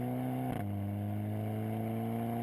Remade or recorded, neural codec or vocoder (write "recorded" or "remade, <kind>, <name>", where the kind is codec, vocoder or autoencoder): recorded